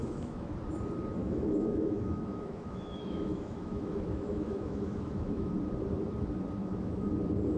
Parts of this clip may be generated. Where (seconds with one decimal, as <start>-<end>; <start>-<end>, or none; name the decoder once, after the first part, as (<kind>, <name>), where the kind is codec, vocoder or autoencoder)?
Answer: 0.0-0.5 (autoencoder, DAC-VAE); 1.2-5.5; 6.6-7.1